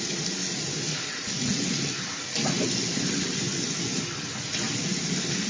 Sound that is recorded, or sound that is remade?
recorded